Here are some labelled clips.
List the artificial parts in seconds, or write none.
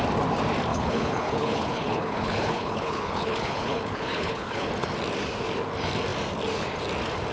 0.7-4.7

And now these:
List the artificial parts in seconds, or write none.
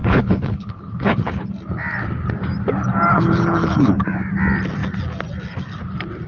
0.0-1.5; 3.1-3.9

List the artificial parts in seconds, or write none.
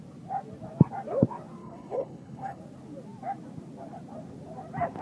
1.6-2.6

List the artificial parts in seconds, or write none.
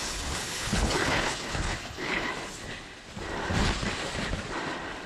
0.0-2.3